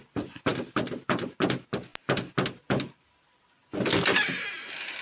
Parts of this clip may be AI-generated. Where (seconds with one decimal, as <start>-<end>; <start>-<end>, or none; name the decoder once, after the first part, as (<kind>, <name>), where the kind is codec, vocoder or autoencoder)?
none